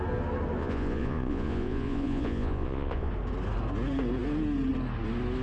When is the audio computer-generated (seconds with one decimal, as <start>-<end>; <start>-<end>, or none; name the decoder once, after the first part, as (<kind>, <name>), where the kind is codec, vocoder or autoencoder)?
0.6-3.1 (vocoder, Vocos)